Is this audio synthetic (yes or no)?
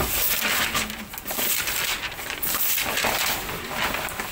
no